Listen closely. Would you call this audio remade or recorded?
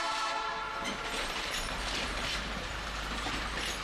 remade